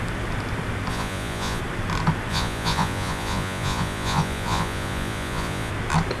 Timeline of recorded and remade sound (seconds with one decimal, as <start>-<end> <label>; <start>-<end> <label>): 0.0-0.9 recorded; 0.9-1.6 remade; 1.6-2.3 recorded; 2.3-5.7 remade; 5.7-6.2 recorded